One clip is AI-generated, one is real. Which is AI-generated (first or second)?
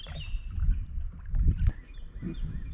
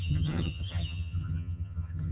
second